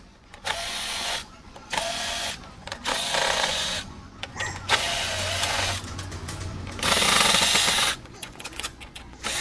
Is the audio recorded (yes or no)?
no